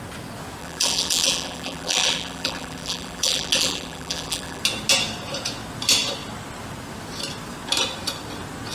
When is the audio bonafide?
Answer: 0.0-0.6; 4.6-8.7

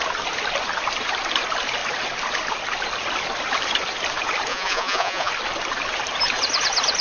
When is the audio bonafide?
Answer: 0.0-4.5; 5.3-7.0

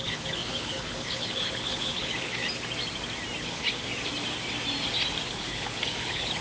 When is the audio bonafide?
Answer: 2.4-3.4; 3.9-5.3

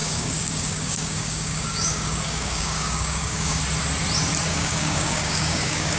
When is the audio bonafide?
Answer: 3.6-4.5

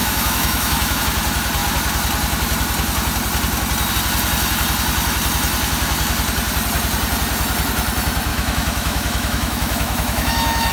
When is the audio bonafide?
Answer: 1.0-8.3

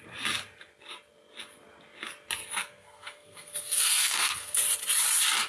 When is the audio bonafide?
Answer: 0.0-2.6; 4.6-5.5

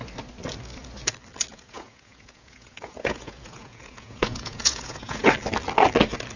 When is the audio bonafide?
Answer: 0.0-1.5; 5.3-6.4